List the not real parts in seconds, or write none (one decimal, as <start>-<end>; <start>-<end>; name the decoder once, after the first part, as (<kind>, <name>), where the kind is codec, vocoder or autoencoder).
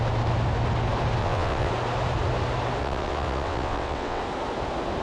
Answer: 1.2-1.7 (vocoder, WaveNeXt); 2.8-4.2